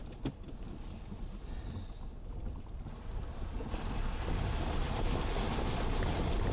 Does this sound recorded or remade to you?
recorded